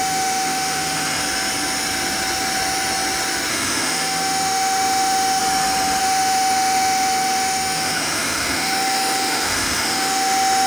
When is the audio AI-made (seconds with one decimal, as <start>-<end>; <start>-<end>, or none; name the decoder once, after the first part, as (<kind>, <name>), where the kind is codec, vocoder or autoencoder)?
0.0-1.2 (autoencoder, DAC-VAE); 3.5-5.4; 6.0-10.7

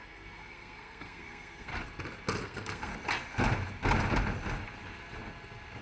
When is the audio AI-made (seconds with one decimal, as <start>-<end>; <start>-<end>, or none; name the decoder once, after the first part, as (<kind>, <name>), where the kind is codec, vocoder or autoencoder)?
0.0-1.7 (codec, SNAC); 2.4-2.9

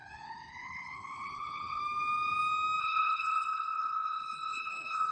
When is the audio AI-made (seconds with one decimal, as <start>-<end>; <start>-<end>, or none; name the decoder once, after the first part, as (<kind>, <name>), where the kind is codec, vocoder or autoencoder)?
0.0-1.8 (codec, HILCodec); 2.8-5.1

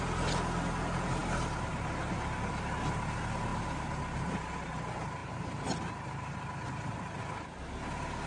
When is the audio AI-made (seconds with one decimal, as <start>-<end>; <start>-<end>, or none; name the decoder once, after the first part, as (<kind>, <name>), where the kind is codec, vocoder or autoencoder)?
none

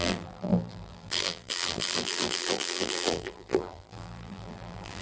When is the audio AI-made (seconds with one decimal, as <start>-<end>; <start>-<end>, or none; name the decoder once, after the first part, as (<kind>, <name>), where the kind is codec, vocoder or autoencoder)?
0.0-5.0 (vocoder, BigVGAN v2)